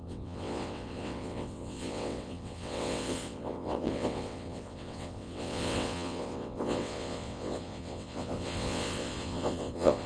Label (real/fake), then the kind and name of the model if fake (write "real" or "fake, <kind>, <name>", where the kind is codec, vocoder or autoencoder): fake, vocoder, WaveNeXt